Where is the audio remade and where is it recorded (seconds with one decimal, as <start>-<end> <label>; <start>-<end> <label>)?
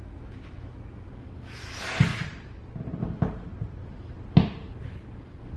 0.0-1.1 remade; 1.1-5.6 recorded